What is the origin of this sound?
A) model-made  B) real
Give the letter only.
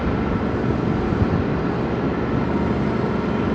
B